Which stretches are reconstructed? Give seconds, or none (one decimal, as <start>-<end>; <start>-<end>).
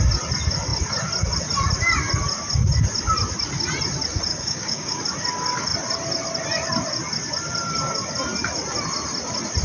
4.3-5.0